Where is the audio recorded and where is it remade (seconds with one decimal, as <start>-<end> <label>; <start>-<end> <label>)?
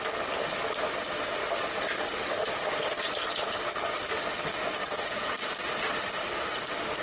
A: 0.0-4.8 recorded; 4.8-5.4 remade; 5.4-7.0 recorded